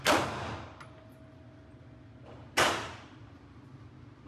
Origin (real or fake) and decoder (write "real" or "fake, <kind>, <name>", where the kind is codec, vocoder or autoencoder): real